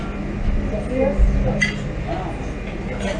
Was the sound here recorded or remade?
recorded